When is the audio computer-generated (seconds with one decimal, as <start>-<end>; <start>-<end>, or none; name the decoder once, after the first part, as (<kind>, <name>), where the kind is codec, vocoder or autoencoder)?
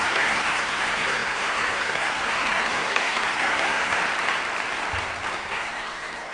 0.0-4.0 (codec, SNAC); 5.3-6.3